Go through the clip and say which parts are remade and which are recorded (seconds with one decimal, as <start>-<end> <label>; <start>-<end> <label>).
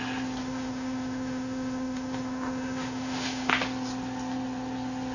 0.0-0.4 recorded; 0.4-3.5 remade; 3.5-5.1 recorded